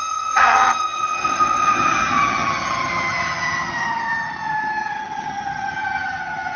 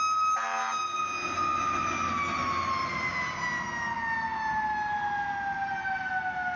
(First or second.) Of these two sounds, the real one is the second